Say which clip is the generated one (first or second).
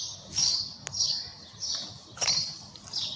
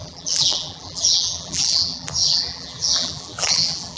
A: second